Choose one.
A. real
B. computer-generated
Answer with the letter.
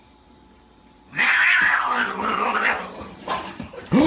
B